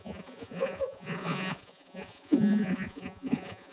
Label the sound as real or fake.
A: fake